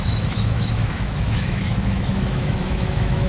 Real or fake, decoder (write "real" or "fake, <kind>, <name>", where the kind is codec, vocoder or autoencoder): fake, autoencoder, DAC-VAE